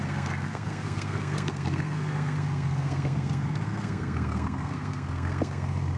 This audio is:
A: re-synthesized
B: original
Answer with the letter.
A